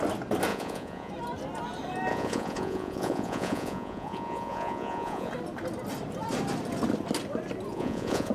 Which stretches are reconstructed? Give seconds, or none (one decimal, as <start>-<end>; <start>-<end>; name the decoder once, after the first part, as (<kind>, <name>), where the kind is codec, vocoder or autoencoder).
0.5-1.1 (vocoder, Vocos); 2.1-5.3; 7.7-8.3